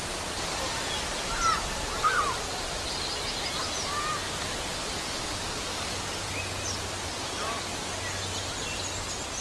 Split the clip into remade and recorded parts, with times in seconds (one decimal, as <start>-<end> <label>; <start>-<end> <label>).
0.0-9.4 recorded